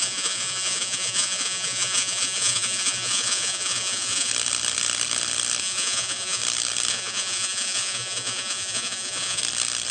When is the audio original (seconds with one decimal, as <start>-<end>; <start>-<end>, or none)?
4.3-5.6; 6.4-6.9; 9.4-9.9